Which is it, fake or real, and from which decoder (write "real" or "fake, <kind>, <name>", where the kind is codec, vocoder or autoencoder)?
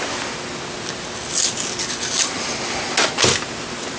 real